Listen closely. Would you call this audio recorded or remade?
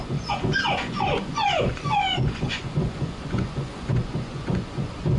remade